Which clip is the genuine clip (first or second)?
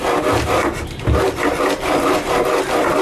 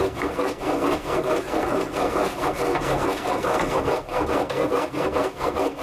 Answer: first